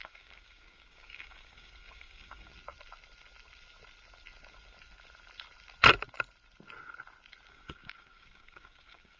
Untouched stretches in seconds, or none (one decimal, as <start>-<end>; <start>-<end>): 2.5-7.5